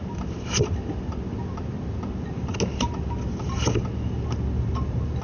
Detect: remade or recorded recorded